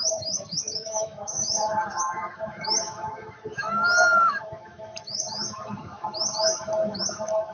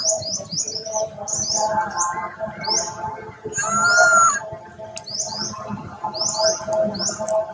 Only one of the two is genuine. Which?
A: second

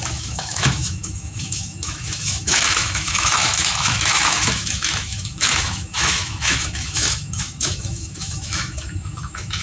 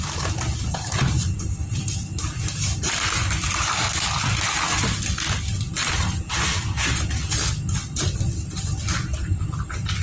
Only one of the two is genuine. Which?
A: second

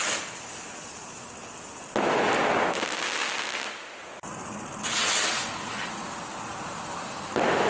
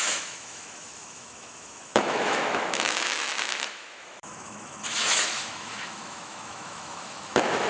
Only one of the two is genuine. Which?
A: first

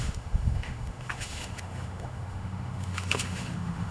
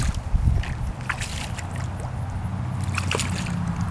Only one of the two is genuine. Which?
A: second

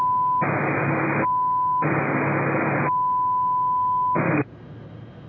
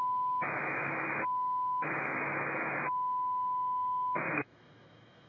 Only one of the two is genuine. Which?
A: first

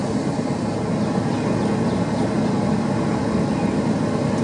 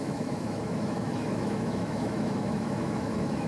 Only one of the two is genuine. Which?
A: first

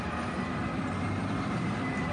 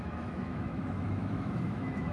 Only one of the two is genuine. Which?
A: first